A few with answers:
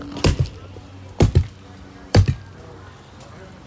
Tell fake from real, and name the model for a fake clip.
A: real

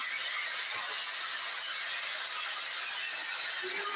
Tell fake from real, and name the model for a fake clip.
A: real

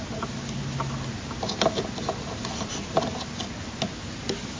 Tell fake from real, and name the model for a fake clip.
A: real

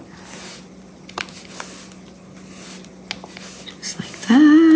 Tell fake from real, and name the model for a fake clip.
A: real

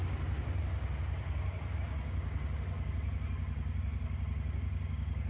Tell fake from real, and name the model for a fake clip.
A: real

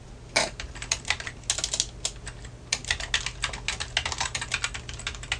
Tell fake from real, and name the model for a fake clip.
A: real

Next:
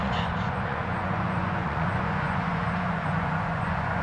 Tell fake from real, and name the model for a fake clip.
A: fake, vocoder, Vocos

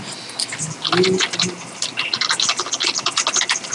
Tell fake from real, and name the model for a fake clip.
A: real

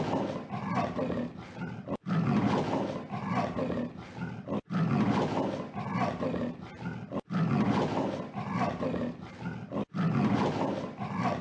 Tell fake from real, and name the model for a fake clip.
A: real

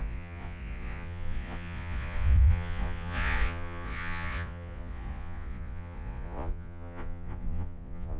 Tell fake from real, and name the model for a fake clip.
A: fake, vocoder, Vocos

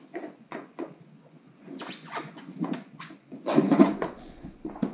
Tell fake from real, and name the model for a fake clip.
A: fake, vocoder, Vocos